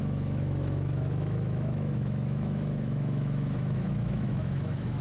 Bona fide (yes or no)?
no